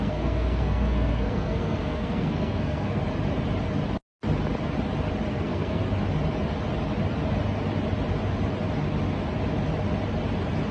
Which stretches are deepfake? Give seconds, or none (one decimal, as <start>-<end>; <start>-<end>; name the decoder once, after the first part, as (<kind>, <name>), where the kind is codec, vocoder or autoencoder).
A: 0.0-3.0 (codec, SNAC); 5.3-5.8